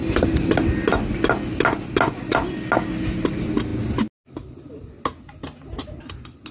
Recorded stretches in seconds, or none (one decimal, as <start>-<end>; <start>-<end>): 0.0-6.5